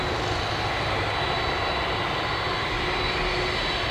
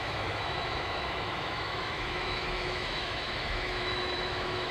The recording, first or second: first